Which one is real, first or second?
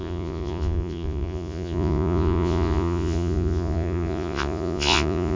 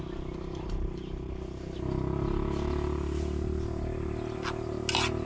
second